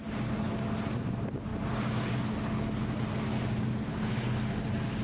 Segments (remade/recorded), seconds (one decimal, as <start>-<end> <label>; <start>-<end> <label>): 0.0-5.0 recorded

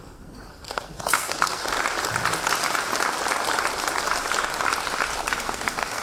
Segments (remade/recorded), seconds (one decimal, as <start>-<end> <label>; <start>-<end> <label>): 0.0-1.6 remade; 1.6-5.2 recorded; 5.2-6.0 remade

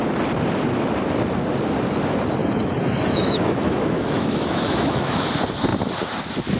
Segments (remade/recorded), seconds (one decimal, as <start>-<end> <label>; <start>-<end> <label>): 0.0-2.4 recorded; 2.4-5.2 remade; 5.2-6.6 recorded

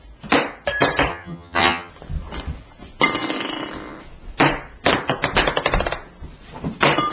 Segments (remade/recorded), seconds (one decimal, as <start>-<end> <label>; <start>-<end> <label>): 0.0-1.1 recorded; 1.1-1.9 remade; 1.9-7.1 recorded